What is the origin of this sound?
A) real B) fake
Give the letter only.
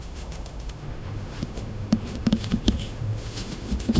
B